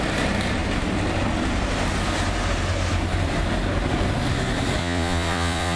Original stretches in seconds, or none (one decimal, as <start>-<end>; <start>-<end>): 0.0-4.8